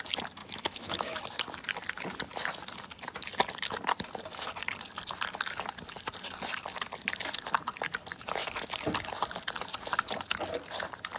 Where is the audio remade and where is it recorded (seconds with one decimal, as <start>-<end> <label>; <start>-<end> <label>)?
0.0-0.4 recorded; 0.4-1.2 remade; 1.2-11.2 recorded